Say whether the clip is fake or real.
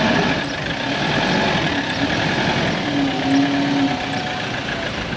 real